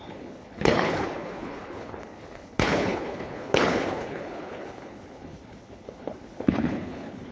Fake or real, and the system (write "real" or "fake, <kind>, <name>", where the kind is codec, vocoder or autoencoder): fake, codec, HILCodec